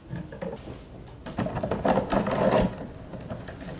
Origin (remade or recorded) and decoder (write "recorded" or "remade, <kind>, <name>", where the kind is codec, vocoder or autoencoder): recorded